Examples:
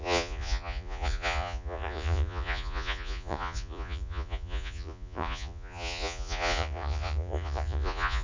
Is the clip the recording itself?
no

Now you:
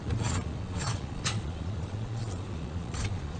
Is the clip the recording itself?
no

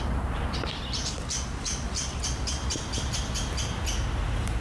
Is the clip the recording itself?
yes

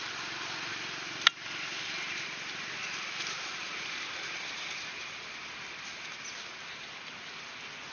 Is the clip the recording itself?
yes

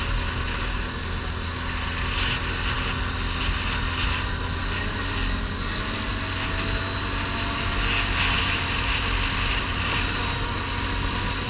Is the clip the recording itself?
yes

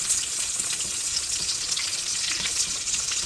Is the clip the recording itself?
no